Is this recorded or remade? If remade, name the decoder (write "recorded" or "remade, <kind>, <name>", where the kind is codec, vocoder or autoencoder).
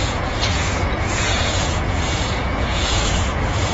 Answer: remade, vocoder, Vocos